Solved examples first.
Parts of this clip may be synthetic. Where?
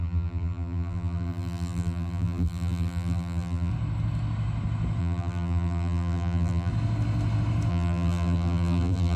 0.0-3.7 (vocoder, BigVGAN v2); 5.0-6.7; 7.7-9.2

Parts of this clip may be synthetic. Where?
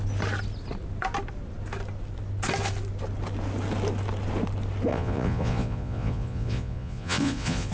4.9-7.7 (vocoder, Vocos)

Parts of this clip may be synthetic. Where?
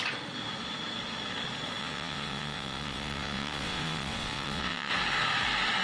1.8-4.9 (vocoder, WaveNeXt)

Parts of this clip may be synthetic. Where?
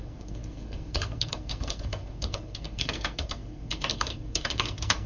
0.0-5.1 (codec, SNAC)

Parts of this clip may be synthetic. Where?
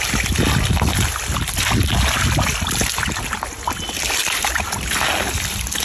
none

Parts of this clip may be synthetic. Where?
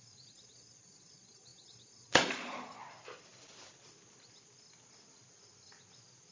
0.0-2.8 (vocoder, Vocos)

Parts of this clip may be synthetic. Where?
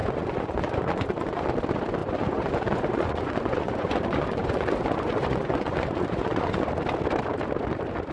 0.0-1.4 (vocoder, Vocos); 2.0-6.7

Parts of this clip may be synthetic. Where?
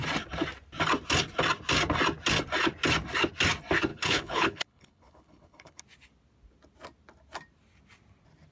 3.9-5.8 (codec, HILCodec)